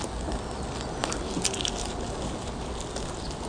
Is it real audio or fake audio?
real